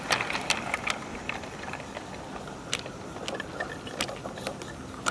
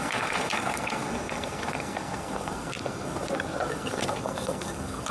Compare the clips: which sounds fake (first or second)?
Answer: second